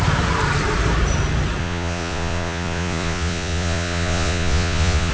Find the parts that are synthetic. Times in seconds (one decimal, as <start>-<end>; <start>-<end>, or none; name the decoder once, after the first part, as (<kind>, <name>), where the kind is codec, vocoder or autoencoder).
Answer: 1.6-5.1 (vocoder, Vocos)

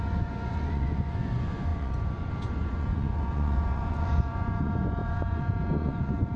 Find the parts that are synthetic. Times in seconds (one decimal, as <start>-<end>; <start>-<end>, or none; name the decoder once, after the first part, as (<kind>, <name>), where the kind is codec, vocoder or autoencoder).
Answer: 0.0-6.4 (vocoder, Vocos)

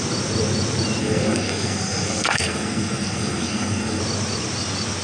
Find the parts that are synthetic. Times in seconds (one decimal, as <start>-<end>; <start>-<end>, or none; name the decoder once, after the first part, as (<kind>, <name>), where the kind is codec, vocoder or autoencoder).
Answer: 1.0-4.0 (codec, SNAC)

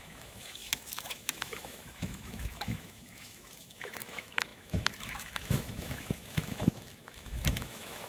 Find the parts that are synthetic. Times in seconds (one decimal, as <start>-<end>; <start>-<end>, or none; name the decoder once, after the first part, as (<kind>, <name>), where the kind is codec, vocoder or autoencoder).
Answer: 0.0-8.1 (autoencoder, DAC-VAE)

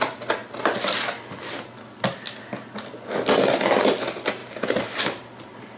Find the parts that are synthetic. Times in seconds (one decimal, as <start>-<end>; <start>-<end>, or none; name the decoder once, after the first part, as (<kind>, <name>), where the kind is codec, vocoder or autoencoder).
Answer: none

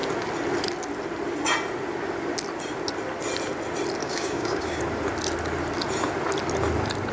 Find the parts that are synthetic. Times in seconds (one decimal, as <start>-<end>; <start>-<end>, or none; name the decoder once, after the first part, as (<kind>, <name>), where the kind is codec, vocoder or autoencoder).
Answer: 4.0-4.8 (codec, DAC)